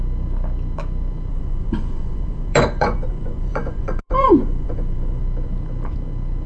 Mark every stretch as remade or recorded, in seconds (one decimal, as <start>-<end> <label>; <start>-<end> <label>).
0.0-1.3 recorded; 1.3-5.2 remade; 5.2-6.5 recorded